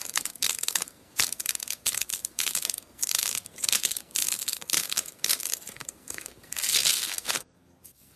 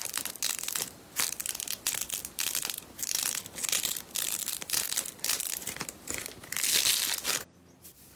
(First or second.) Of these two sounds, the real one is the second